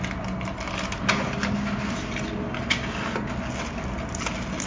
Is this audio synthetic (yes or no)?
no